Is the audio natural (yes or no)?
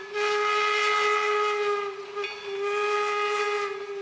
yes